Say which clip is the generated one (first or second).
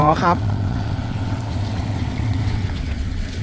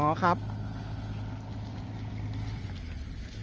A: first